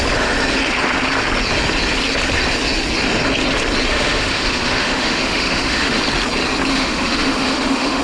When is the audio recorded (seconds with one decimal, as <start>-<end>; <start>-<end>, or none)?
0.0-3.9; 6.0-6.7